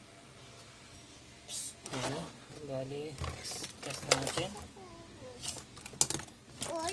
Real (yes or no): yes